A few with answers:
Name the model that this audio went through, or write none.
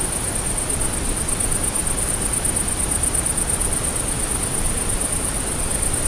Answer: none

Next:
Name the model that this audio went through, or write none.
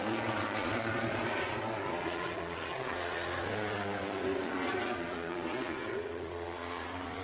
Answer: vocoder, Vocos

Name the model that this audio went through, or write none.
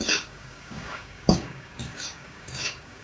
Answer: codec, DAC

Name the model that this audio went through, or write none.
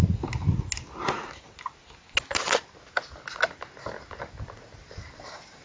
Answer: none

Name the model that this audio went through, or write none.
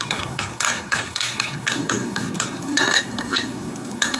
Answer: codec, SNAC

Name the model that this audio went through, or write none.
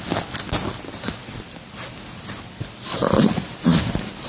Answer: none